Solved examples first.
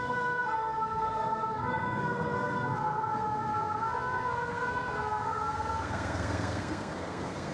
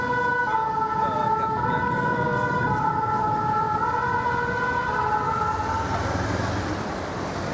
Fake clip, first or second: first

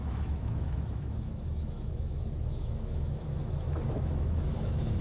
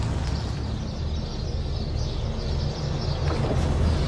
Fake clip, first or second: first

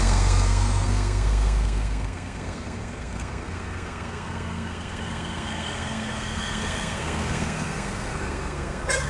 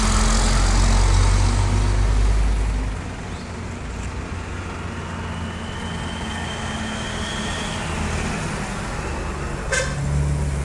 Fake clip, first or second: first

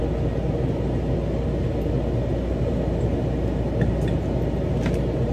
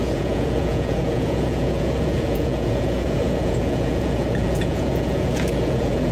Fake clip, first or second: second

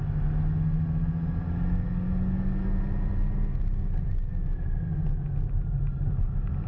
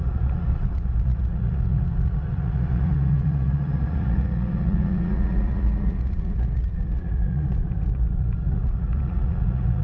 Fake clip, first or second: second